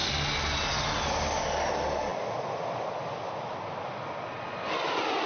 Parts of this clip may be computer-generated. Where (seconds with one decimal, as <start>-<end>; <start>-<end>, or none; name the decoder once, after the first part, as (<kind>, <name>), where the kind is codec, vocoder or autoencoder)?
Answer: none